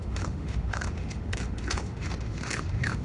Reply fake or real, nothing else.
fake